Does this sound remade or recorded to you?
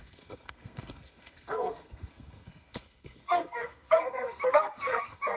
remade